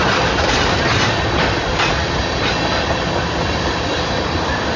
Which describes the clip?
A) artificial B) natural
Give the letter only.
B